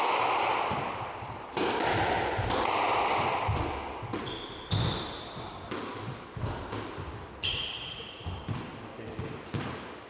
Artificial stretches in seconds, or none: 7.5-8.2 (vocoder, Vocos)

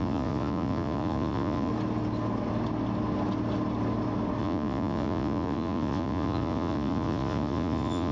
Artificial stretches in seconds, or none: 0.0-1.7 (vocoder, Vocos); 4.4-8.1

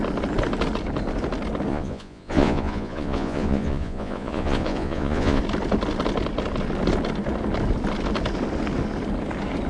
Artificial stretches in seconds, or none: 1.7-5.4 (vocoder, Vocos)